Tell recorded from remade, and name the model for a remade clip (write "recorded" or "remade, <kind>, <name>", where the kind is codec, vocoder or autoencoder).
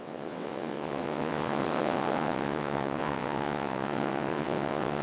remade, vocoder, WaveNeXt